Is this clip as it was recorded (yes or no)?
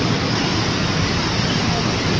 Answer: yes